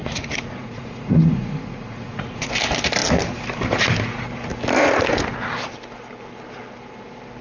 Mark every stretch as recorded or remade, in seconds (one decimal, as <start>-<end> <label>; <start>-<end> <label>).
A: 0.0-2.5 remade; 2.5-7.4 recorded